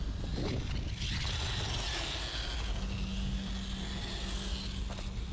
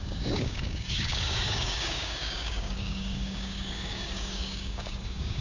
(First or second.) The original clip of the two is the first